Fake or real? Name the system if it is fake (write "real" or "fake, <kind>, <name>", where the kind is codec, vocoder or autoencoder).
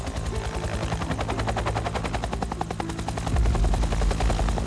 real